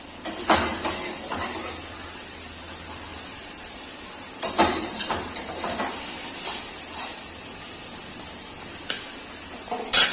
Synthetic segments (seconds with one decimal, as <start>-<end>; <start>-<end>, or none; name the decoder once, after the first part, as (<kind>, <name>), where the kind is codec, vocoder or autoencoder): 3.1-5.8 (vocoder, BigVGAN v2)